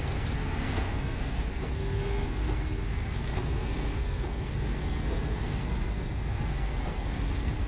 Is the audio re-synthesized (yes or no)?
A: yes